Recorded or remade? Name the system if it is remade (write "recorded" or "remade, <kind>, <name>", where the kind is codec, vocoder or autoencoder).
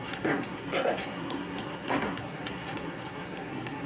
remade, codec, SNAC